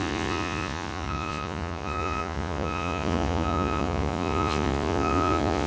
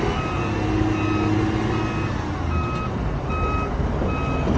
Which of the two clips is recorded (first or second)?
second